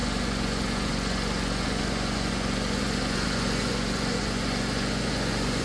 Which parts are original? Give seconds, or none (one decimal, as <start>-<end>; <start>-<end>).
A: none